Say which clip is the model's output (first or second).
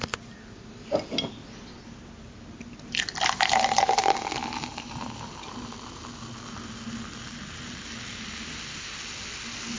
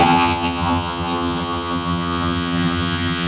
second